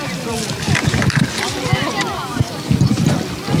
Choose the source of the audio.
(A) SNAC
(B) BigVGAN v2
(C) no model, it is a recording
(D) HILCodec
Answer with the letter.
C